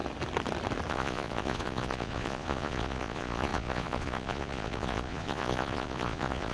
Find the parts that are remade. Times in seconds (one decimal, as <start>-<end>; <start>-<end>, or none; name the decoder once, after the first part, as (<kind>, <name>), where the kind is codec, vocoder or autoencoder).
0.9-6.5 (vocoder, Vocos)